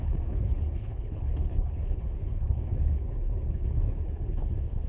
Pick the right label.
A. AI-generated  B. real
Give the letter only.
A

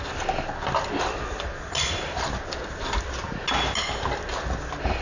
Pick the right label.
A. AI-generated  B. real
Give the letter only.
B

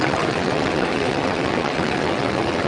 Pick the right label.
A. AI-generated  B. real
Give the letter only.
A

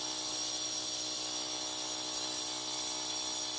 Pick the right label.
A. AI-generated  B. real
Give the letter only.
B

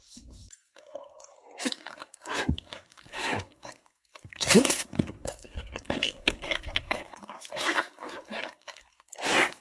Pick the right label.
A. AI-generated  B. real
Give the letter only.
A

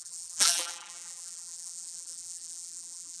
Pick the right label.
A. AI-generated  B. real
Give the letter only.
A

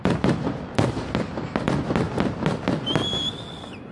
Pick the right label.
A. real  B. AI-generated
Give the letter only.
A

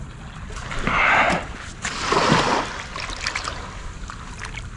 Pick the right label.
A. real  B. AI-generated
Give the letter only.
A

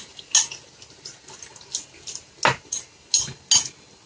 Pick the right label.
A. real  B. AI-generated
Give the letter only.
A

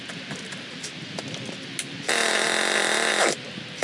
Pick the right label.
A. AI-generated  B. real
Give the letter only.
B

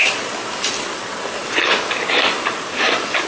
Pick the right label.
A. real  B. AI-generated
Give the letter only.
A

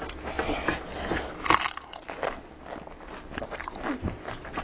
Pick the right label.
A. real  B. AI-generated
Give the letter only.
A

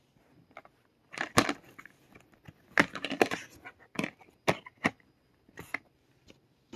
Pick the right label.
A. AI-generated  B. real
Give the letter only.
B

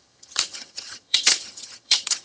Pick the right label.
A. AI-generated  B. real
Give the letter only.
A